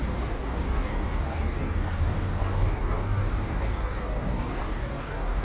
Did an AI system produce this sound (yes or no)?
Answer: yes